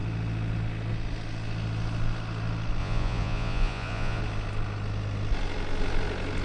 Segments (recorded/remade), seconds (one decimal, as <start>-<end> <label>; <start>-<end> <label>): 0.0-2.8 recorded; 2.8-4.2 remade; 4.2-6.4 recorded